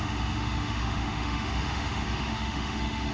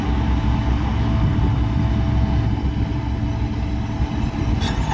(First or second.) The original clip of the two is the second